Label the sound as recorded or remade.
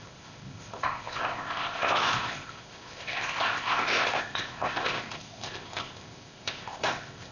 remade